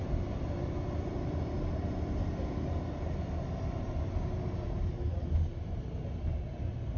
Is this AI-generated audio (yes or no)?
no